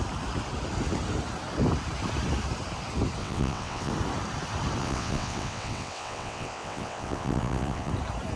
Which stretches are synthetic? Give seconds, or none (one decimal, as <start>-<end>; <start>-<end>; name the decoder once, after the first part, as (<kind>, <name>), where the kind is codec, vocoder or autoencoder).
3.2-3.9 (vocoder, WaveNeXt); 4.8-7.9